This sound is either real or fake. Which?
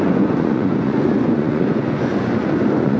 fake